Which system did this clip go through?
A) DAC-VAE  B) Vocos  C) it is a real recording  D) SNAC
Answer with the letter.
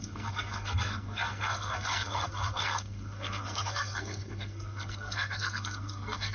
D